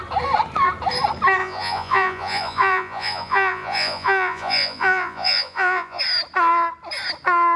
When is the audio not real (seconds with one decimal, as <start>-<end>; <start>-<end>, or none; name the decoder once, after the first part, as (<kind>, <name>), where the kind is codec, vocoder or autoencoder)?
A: 1.4-6.0 (vocoder, Vocos)